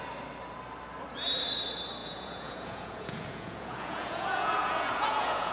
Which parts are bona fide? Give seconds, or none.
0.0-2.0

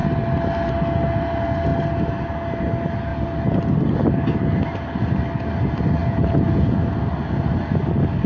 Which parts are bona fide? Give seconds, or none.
0.0-6.0; 6.8-8.3

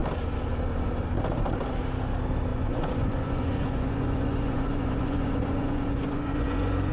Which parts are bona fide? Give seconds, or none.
0.0-2.5